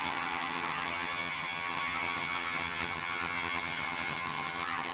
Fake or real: fake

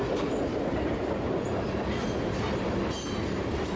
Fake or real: real